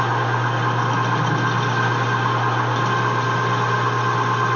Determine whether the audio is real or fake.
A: real